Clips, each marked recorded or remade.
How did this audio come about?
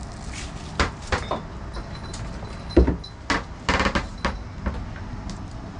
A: recorded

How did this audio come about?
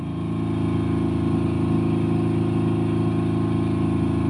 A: recorded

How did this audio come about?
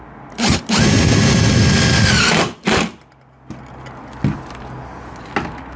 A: recorded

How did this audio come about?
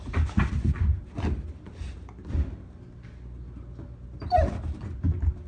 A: recorded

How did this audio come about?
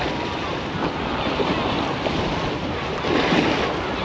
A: recorded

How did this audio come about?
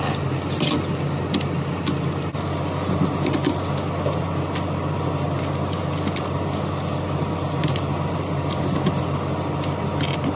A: recorded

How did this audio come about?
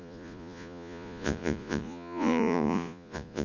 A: remade